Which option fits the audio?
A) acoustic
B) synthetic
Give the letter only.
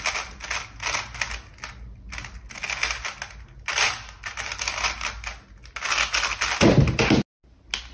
A